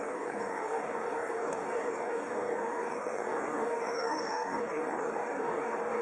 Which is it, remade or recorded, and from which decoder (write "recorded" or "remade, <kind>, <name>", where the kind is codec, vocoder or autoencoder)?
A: remade, codec, DAC